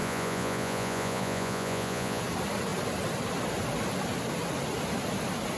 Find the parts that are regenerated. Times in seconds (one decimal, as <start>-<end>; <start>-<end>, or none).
0.0-2.2